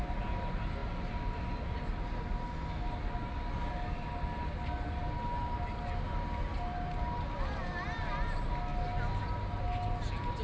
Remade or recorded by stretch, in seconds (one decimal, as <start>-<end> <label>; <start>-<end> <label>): 0.0-10.4 recorded